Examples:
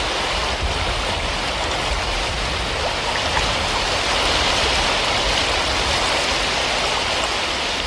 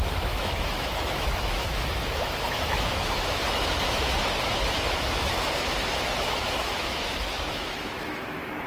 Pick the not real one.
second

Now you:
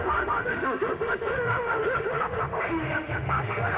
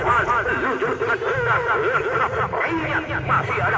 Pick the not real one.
first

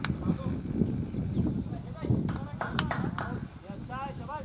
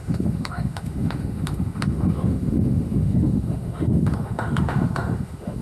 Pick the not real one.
second